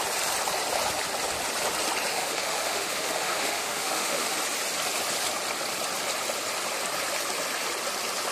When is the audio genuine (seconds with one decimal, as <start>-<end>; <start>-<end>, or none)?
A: 0.0-2.1; 4.3-8.3